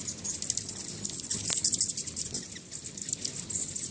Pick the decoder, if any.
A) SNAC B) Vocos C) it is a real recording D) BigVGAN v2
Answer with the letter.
C